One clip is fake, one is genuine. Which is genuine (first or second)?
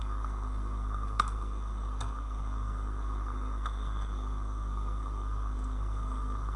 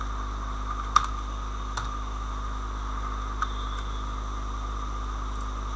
second